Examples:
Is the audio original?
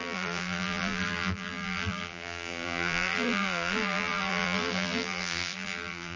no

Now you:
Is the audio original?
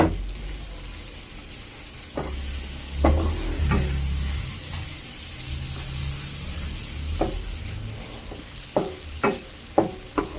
yes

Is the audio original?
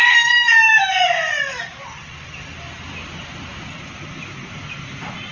yes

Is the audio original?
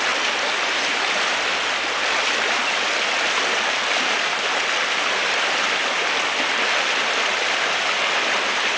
yes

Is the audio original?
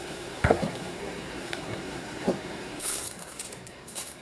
no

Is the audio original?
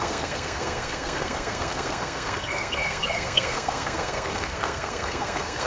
no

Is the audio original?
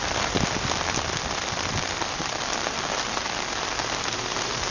no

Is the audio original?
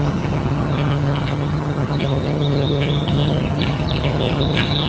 no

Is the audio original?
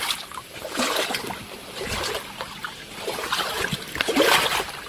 yes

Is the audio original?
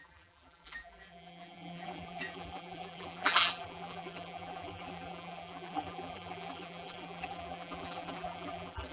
no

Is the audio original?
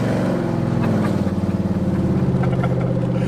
yes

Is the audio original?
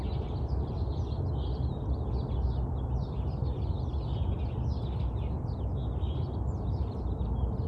yes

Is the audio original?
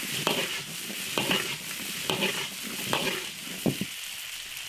yes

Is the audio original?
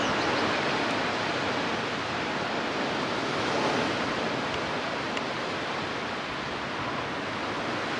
yes